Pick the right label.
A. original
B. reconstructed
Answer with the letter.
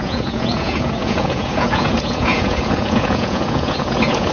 B